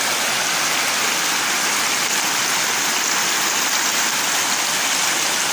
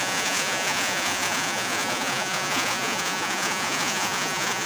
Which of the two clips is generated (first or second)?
second